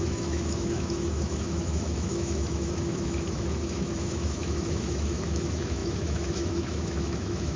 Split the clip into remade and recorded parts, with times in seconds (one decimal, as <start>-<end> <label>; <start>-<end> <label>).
0.0-7.6 remade

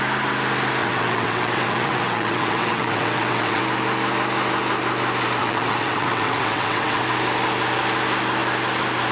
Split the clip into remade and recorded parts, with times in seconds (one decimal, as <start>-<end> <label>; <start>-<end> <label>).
0.0-0.8 recorded; 0.8-3.6 remade; 3.6-5.4 recorded; 5.4-7.0 remade; 7.0-9.1 recorded

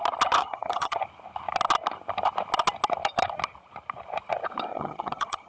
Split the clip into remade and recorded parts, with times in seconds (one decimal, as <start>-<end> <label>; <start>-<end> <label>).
0.0-0.4 recorded; 0.4-1.0 remade; 1.0-4.7 recorded; 4.7-5.5 remade